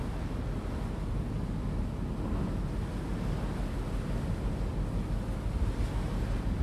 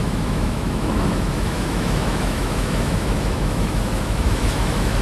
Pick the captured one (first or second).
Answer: first